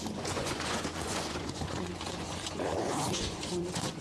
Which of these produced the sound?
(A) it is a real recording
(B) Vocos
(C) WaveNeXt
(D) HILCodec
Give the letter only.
B